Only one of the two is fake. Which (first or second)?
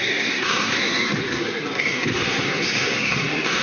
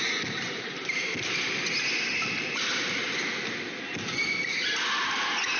first